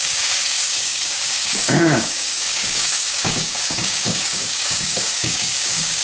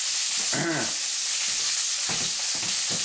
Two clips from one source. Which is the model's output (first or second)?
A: first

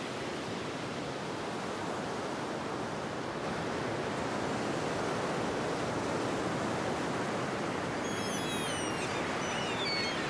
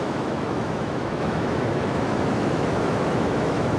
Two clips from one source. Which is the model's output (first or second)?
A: second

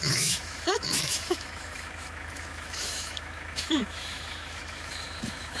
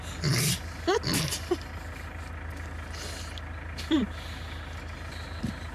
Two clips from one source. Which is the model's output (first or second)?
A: first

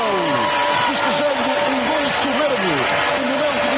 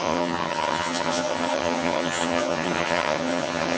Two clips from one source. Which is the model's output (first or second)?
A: second